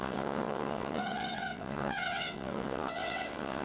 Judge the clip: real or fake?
fake